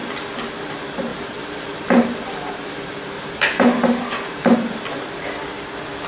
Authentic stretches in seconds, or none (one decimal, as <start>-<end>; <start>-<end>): 0.7-1.1; 4.8-6.1